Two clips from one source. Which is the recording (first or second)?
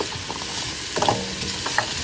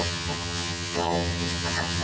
first